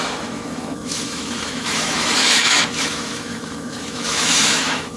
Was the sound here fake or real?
fake